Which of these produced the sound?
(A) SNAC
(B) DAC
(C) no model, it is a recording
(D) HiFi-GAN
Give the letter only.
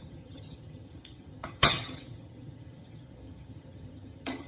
D